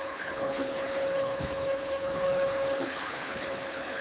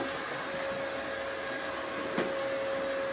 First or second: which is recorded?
second